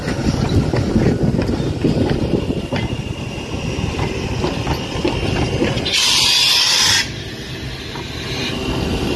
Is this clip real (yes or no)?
yes